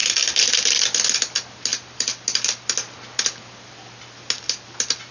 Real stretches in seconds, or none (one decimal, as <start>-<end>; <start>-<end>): 0.0-5.1